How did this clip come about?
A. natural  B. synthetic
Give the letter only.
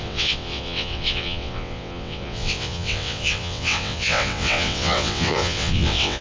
B